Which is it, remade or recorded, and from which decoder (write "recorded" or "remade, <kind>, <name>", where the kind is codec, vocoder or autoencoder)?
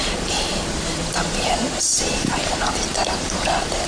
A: remade, vocoder, BigVGAN v2